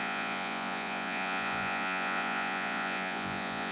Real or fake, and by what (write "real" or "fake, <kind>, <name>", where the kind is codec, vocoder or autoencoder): fake, vocoder, Vocos